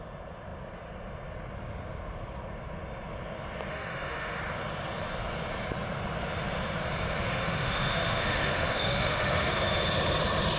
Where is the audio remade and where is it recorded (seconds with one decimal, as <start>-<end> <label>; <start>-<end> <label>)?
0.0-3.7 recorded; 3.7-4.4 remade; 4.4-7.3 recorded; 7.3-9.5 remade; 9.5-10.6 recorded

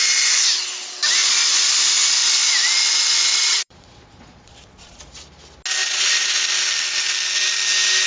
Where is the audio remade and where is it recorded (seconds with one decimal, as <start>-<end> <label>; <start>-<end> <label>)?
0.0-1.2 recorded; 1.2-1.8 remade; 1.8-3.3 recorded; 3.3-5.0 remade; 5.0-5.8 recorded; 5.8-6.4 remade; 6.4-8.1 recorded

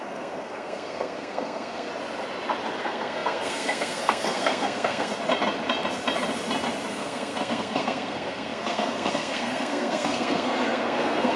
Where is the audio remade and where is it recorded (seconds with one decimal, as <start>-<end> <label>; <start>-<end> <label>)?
0.0-1.9 remade; 1.9-2.8 recorded; 2.8-5.1 remade; 5.1-6.9 recorded; 6.9-11.4 remade

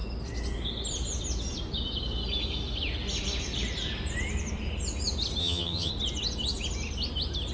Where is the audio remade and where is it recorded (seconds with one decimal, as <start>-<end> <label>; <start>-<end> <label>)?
0.0-5.4 recorded; 5.4-5.9 remade; 5.9-7.5 recorded

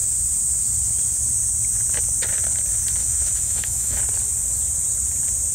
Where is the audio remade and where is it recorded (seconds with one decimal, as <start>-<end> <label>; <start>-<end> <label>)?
0.0-3.0 recorded; 3.0-4.0 remade; 4.0-5.5 recorded

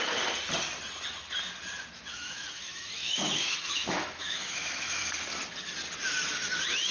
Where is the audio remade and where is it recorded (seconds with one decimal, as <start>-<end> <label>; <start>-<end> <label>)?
0.0-2.1 recorded; 2.1-5.1 remade; 5.1-6.9 recorded

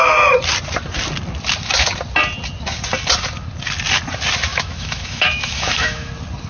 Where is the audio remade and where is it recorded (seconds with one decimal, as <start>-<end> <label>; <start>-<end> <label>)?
0.0-4.5 recorded; 4.5-6.1 remade; 6.1-6.5 recorded

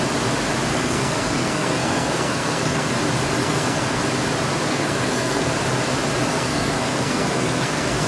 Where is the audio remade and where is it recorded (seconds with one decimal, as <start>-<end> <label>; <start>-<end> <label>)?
0.0-0.7 recorded; 0.7-2.9 remade; 2.9-3.4 recorded; 3.4-4.0 remade; 4.0-4.7 recorded; 4.7-5.5 remade; 5.5-6.3 recorded; 6.3-8.1 remade